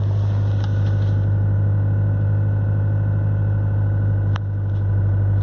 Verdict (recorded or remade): recorded